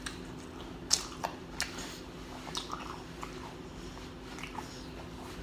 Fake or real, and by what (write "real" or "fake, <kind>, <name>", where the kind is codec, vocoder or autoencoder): real